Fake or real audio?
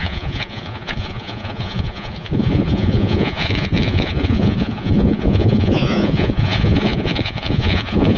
fake